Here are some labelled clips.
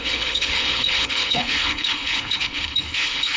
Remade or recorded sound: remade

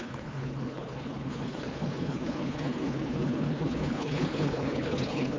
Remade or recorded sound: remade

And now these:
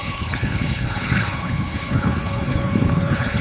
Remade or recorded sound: remade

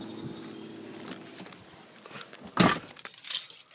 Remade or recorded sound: recorded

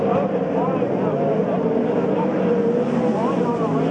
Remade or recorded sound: recorded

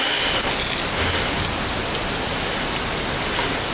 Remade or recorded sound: recorded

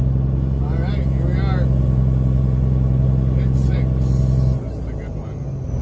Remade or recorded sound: recorded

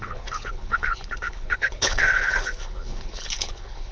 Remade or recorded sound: remade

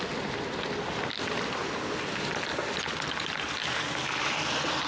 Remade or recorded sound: recorded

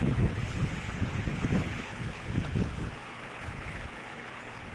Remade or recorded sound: remade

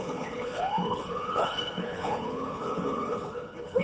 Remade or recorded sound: remade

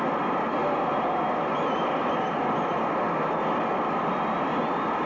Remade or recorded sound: recorded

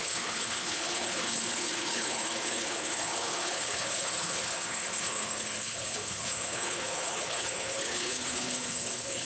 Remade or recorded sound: remade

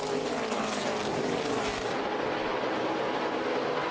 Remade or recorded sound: recorded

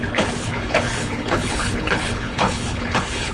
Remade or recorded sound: remade